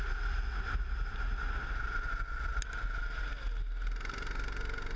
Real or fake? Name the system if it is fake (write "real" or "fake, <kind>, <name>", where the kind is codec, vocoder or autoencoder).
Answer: real